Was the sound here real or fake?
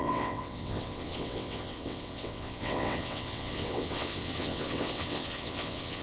fake